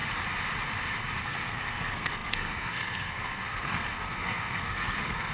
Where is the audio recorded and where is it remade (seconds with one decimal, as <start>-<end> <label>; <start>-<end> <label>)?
0.0-1.2 recorded; 1.2-5.3 remade